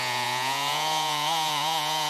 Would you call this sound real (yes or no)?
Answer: no